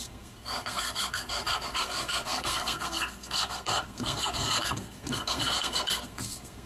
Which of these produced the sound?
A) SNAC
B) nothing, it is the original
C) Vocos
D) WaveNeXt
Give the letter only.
A